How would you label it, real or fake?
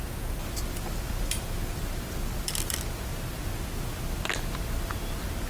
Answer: real